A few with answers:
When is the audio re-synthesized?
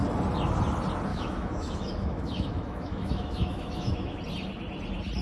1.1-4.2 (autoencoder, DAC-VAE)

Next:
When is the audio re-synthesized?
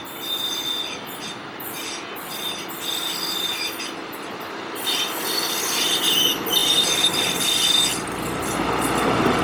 none